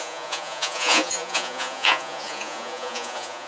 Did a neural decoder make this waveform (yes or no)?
yes